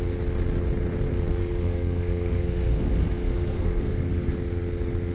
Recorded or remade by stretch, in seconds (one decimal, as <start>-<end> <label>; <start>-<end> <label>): 0.0-1.4 recorded; 1.4-4.3 remade; 4.3-5.1 recorded